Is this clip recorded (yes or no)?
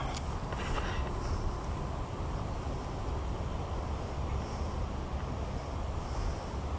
yes